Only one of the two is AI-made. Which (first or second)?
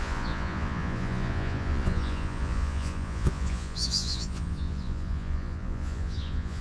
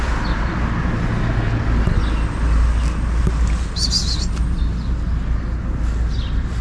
first